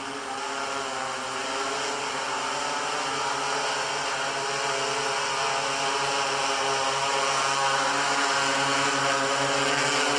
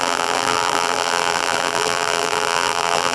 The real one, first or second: first